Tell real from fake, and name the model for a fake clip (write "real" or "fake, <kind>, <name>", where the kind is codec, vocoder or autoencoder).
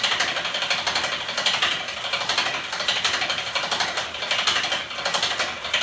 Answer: real